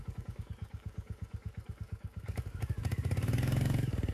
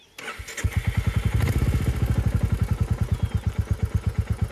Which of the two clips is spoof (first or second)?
first